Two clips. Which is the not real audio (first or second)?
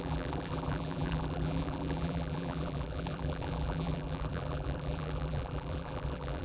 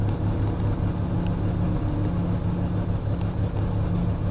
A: first